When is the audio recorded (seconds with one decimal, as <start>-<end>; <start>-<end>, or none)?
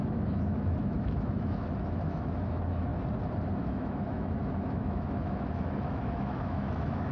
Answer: 2.9-3.5